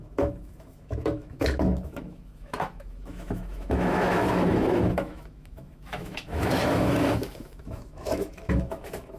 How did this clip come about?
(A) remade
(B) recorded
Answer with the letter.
A